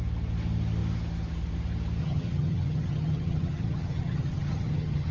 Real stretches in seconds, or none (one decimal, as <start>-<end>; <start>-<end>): 0.0-2.0